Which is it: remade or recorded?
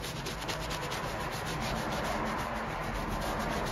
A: recorded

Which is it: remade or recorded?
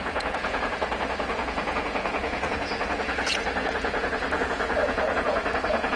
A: remade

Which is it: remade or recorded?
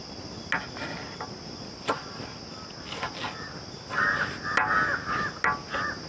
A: recorded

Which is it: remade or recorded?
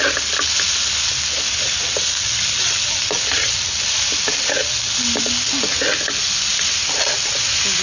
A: recorded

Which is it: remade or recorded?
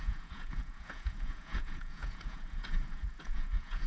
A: remade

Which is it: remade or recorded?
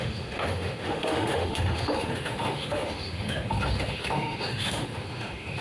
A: remade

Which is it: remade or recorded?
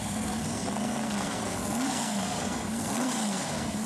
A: remade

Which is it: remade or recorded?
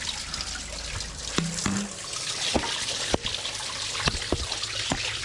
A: recorded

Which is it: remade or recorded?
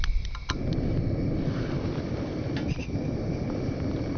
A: recorded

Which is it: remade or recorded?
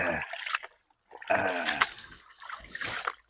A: recorded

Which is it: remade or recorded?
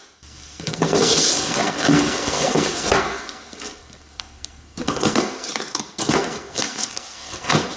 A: remade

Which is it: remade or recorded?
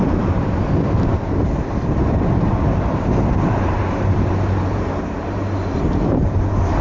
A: remade